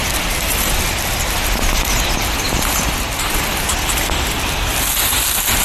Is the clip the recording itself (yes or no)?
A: yes